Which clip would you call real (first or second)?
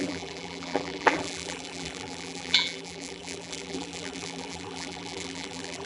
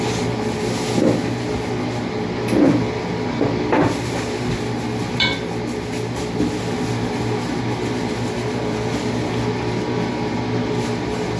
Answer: second